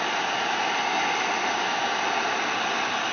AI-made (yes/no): no